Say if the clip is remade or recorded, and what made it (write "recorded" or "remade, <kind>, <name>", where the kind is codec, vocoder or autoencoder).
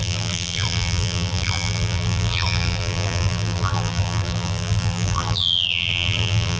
remade, vocoder, BigVGAN v2